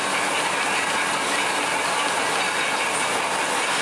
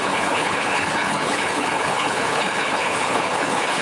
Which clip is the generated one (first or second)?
second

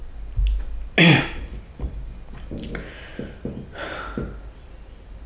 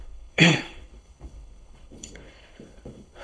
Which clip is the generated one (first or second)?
second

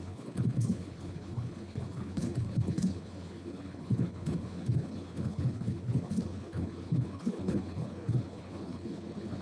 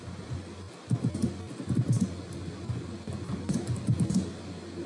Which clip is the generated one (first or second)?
first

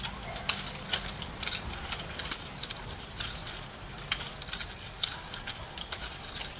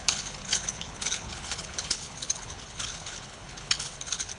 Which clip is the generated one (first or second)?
second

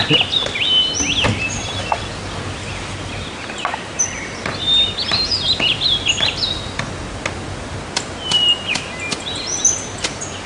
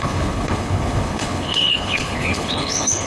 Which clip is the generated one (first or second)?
second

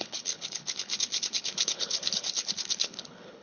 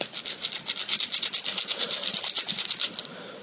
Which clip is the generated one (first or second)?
first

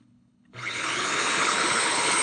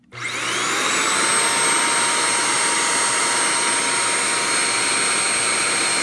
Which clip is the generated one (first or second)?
first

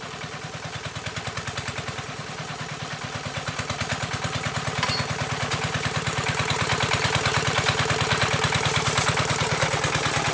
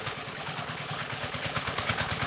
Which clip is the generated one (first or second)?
second